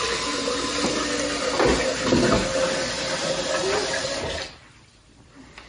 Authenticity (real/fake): real